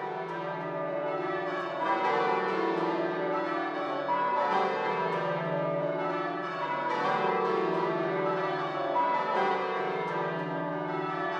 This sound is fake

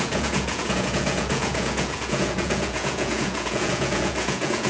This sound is fake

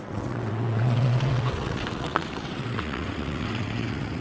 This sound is fake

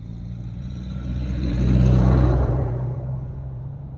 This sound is fake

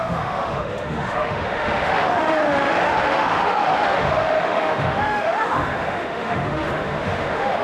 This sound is fake